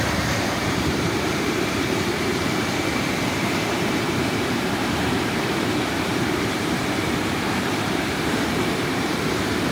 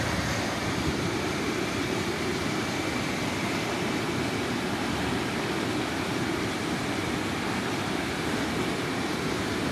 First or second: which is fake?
first